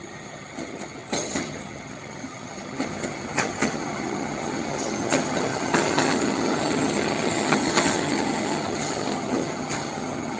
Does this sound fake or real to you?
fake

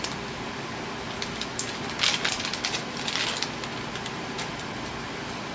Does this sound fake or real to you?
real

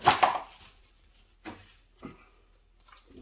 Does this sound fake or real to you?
real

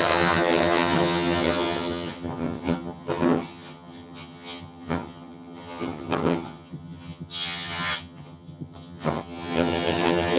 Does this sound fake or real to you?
fake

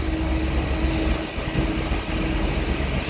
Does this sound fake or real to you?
real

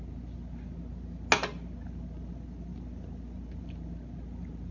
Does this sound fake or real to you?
real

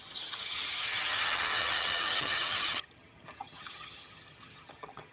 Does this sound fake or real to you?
fake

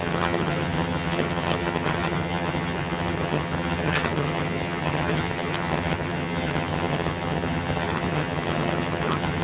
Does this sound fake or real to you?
fake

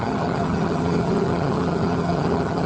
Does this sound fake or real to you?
fake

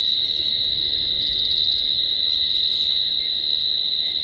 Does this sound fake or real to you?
real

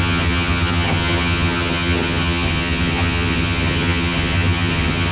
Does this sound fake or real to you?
fake